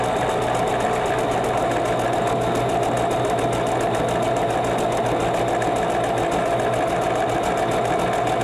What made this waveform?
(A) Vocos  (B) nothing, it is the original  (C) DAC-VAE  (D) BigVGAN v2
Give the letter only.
B